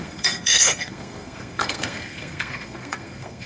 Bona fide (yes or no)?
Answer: no